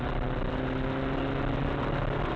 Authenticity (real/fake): real